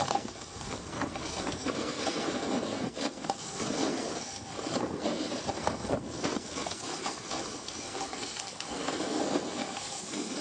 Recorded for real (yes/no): no